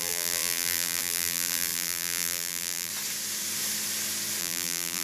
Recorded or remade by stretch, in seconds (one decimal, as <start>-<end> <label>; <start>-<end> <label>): 0.0-2.9 remade; 2.9-4.4 recorded; 4.4-5.0 remade